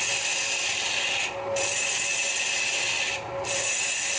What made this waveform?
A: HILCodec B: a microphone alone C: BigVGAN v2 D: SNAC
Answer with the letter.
B